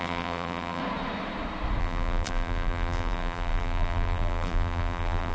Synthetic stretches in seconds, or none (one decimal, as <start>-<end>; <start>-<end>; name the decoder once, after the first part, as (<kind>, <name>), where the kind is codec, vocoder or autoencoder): 0.0-0.8 (vocoder, BigVGAN v2); 1.8-5.3